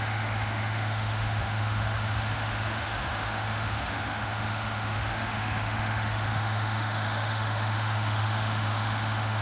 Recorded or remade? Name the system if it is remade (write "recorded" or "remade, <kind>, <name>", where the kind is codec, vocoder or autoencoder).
remade, autoencoder, DAC-VAE